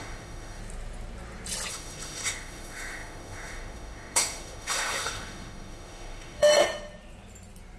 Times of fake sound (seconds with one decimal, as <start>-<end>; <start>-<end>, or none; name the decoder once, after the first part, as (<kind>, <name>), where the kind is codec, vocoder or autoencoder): 0.0-0.6 (autoencoder, DAC-VAE); 1.7-6.5